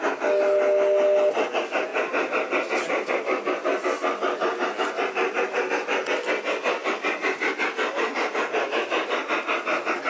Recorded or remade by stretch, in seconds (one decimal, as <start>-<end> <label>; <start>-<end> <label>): 0.0-10.1 recorded